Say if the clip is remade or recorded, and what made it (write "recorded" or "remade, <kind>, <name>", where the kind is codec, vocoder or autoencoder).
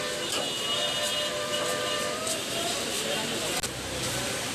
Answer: recorded